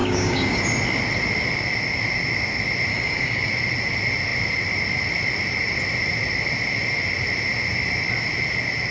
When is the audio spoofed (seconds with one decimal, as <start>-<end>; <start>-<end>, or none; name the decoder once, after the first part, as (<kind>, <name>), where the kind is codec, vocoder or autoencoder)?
0.0-0.6 (codec, DAC); 2.9-3.5